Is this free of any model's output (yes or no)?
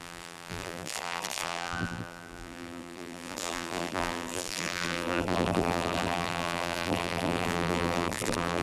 no